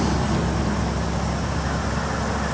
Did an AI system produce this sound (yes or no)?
no